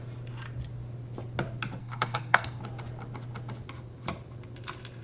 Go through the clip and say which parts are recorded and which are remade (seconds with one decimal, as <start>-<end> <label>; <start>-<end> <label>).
0.0-1.8 recorded; 1.8-2.6 remade; 2.6-5.0 recorded